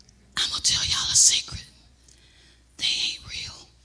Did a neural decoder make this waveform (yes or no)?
yes